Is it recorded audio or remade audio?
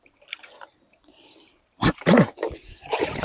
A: remade